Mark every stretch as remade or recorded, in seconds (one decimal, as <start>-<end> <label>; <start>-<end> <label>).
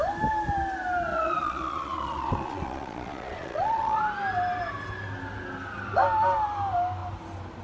0.0-1.1 recorded; 1.1-4.0 remade; 4.0-7.6 recorded